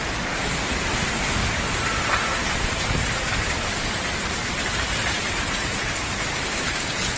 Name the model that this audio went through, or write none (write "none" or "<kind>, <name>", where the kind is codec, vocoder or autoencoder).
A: vocoder, BigVGAN v2